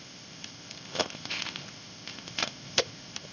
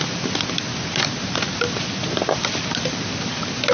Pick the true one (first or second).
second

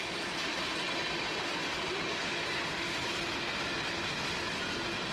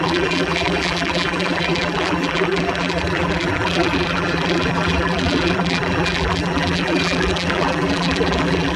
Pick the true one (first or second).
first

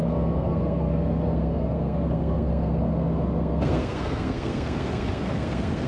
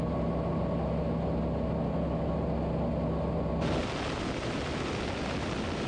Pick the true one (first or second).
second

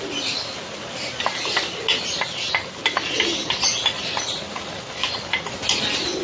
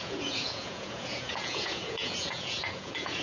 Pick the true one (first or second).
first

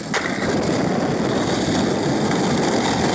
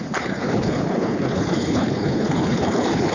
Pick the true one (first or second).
first